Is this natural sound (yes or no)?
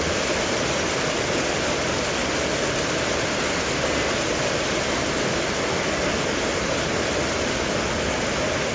yes